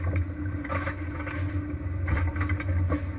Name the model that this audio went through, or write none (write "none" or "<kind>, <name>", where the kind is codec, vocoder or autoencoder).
none